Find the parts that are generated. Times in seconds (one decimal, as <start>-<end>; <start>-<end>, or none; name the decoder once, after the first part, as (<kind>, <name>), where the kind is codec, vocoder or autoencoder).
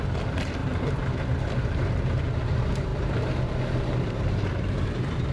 0.0-5.3 (vocoder, BigVGAN v2)